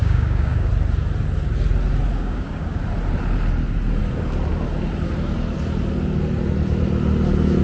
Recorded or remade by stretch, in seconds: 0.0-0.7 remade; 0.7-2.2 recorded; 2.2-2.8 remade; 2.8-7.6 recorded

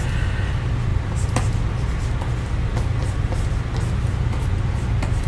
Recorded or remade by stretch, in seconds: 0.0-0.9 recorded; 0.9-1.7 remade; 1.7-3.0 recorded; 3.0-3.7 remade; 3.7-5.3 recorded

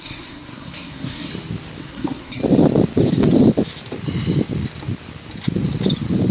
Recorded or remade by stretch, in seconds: 0.0-1.3 remade; 1.3-1.8 recorded; 1.8-2.4 remade; 2.4-6.3 recorded

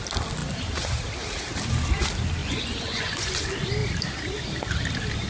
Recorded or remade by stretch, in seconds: 0.0-2.4 recorded; 2.4-3.3 remade; 3.3-5.3 recorded

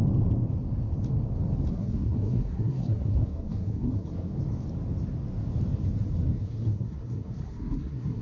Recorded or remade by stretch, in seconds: 0.0-1.7 recorded; 1.7-4.3 remade; 4.3-6.4 recorded; 6.4-8.2 remade

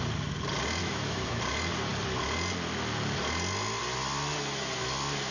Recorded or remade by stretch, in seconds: 0.0-0.8 recorded; 0.8-1.4 remade; 1.4-5.3 recorded

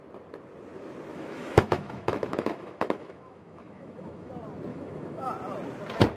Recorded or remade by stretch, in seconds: 0.0-1.1 recorded; 1.1-4.3 remade; 4.3-4.7 recorded; 4.7-5.3 remade; 5.3-6.2 recorded

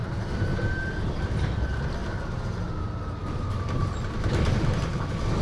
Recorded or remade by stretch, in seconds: 0.0-5.4 recorded